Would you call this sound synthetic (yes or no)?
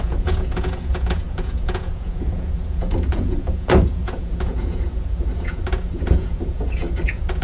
yes